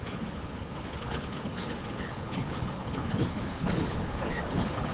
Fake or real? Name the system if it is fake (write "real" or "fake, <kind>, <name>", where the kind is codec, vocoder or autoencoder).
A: fake, codec, HILCodec